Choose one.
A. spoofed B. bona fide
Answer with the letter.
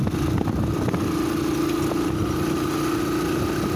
B